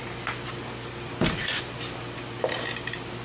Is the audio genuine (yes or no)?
yes